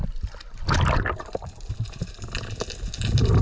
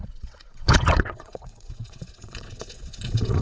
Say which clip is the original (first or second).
first